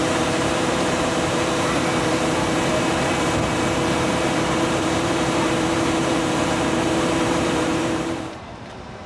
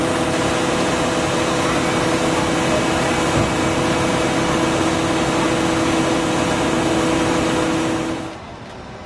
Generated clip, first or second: first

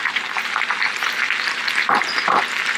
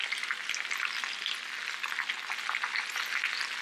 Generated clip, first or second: first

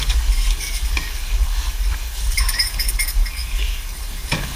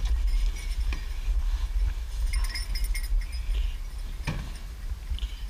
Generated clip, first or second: first